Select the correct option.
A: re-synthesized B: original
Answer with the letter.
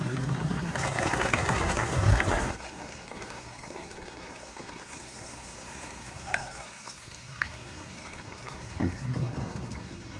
A